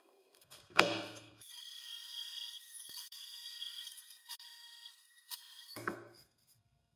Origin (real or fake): fake